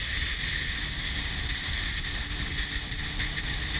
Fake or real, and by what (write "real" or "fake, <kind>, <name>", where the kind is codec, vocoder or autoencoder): real